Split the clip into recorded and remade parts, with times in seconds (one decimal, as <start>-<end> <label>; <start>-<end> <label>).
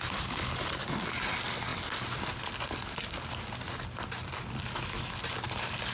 0.0-5.9 recorded